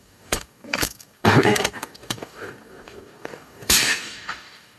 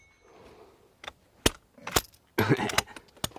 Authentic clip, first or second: second